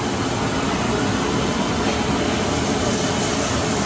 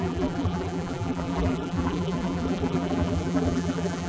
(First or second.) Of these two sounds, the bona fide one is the first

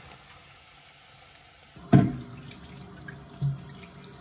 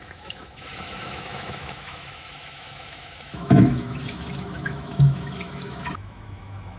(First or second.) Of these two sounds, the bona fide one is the first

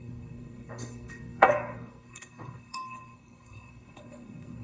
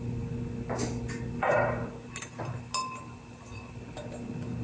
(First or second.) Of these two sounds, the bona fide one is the second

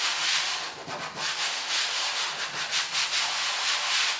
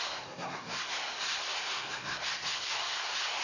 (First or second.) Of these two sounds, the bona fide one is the first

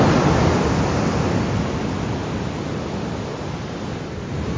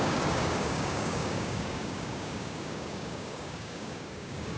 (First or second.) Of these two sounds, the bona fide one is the first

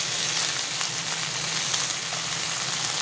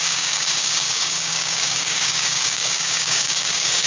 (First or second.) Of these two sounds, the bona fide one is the first